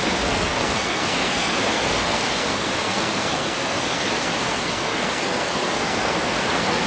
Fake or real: fake